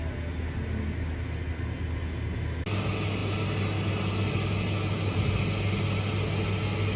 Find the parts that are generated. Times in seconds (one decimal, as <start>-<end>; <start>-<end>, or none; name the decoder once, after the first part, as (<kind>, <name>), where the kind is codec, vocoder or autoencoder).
none